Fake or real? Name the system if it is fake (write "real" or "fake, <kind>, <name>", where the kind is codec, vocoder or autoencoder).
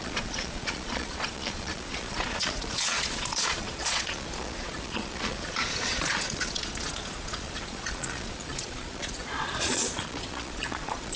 fake, vocoder, Vocos